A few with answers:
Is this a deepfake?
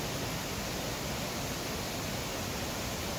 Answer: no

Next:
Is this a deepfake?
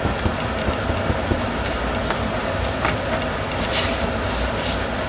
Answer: no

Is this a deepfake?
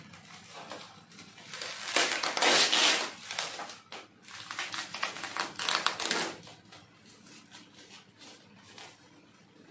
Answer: no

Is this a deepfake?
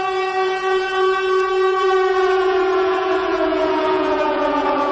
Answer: yes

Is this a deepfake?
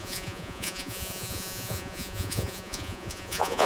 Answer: yes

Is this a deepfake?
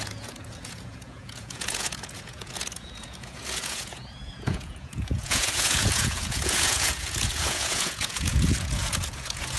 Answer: yes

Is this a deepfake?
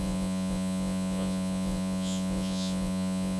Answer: yes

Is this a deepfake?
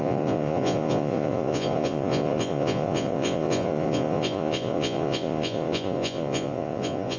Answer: yes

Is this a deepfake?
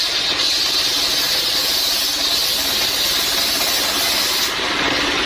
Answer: no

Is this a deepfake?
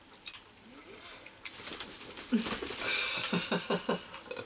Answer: no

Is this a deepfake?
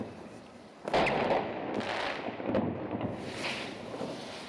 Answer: no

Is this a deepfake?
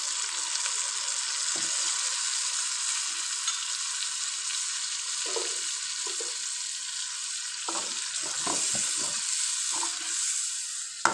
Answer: no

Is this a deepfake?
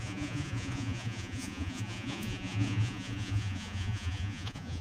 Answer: yes